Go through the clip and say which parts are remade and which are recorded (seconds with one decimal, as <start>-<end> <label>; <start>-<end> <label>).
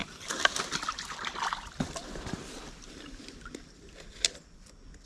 0.0-5.0 recorded